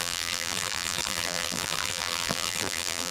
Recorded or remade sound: remade